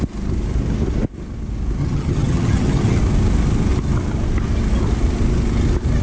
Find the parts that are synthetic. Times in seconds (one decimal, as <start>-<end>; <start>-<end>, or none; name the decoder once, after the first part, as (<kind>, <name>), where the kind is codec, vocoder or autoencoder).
1.8-3.0 (vocoder, HiFi-GAN)